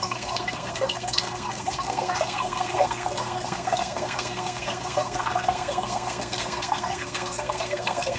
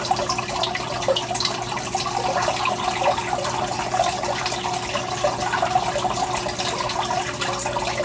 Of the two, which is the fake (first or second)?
first